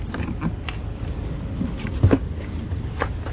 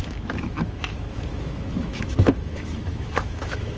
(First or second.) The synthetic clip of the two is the second